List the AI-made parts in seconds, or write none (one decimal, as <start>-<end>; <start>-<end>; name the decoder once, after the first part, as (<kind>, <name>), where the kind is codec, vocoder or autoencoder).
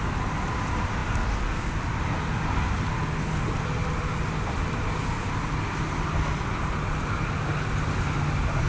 none